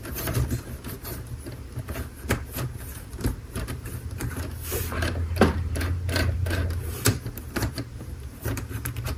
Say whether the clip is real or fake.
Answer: fake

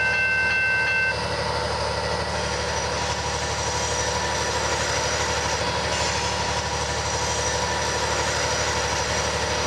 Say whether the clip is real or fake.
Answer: real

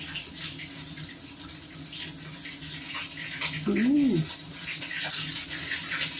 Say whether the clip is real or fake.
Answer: real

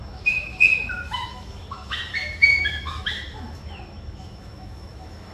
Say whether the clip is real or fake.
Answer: fake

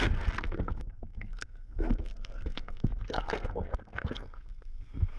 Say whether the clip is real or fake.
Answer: fake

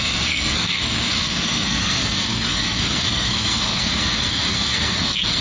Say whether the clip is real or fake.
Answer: fake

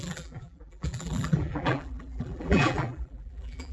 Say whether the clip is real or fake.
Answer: fake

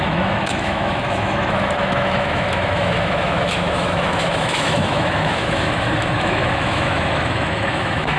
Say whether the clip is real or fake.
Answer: fake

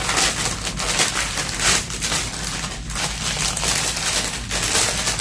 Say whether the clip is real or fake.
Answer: real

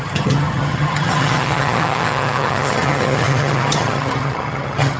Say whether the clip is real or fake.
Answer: fake